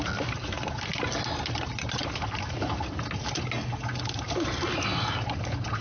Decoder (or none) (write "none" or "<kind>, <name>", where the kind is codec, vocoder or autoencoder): none